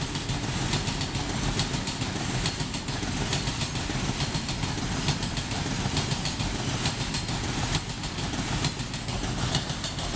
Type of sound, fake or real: real